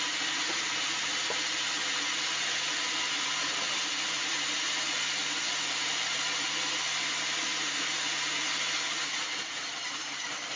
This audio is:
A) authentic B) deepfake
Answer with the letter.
A